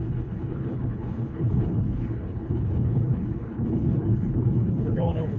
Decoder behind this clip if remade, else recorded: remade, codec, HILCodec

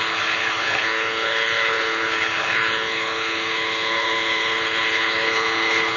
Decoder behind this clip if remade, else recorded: remade, codec, HILCodec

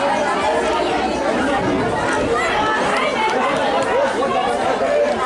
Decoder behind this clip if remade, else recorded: recorded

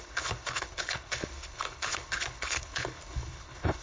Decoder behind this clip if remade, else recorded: remade, codec, HILCodec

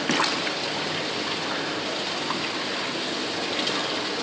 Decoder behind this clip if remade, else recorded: recorded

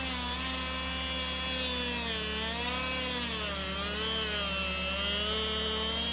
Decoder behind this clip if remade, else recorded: recorded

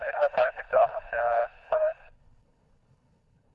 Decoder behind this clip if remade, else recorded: remade, codec, HILCodec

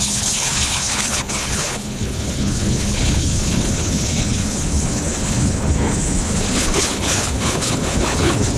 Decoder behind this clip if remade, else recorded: remade, codec, HILCodec